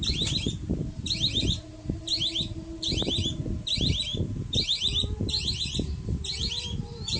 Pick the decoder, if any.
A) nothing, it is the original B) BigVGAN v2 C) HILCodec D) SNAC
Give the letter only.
B